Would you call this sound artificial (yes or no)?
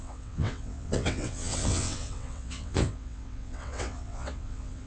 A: yes